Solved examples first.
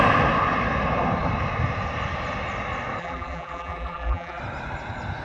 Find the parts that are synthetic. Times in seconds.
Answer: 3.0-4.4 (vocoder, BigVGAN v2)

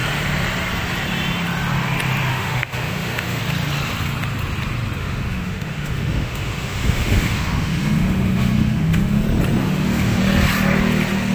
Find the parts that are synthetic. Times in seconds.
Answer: 2.3-3.4 (autoencoder, DAC-VAE); 5.0-9.2; 9.6-10.2

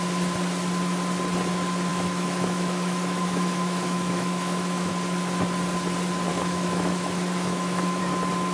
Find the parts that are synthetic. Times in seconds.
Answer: 1.9-4.9 (autoencoder, DAC-VAE); 6.3-8.0

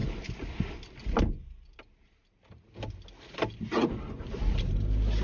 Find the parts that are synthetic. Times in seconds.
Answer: none

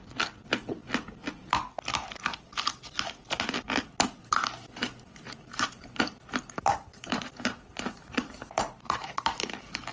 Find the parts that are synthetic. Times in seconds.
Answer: 4.2-9.1 (vocoder, BigVGAN v2)

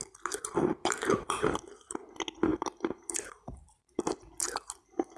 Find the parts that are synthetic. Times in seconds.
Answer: 0.4-1.4 (vocoder, BigVGAN v2); 2.5-3.9